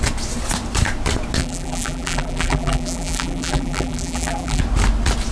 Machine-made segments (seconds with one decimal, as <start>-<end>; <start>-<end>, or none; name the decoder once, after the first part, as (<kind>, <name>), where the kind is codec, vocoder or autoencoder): 1.4-4.6 (vocoder, BigVGAN v2)